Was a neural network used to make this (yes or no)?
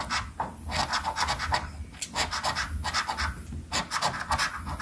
no